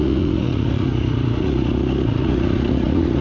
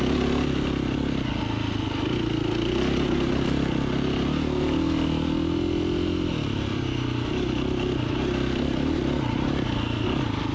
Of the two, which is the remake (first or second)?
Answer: first